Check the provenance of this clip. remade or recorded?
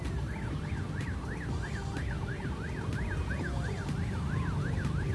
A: recorded